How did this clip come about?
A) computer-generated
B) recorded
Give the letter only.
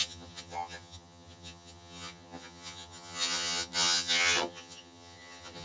A